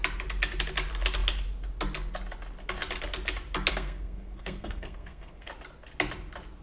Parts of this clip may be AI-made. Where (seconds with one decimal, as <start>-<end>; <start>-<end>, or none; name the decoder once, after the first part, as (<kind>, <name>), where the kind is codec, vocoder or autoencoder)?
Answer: 3.7-5.5 (codec, SNAC)